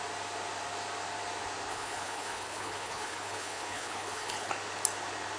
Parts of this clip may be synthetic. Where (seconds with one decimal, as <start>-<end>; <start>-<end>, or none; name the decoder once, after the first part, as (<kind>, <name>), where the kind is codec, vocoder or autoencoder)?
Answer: 1.7-4.5 (codec, HILCodec)